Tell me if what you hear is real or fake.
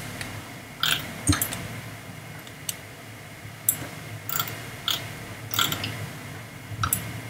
real